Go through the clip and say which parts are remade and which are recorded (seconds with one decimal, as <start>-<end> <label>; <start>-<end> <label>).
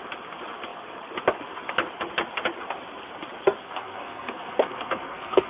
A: 0.0-3.6 recorded; 3.6-5.5 remade